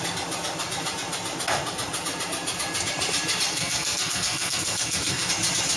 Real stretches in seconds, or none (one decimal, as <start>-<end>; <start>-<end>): 0.0-3.5; 5.3-5.8

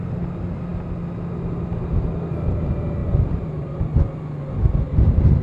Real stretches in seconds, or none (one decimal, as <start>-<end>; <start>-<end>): 0.0-3.0; 3.6-5.4

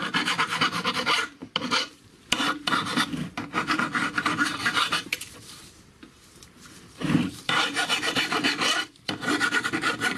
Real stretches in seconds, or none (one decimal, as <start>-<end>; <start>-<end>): none